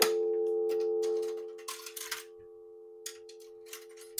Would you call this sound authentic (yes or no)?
yes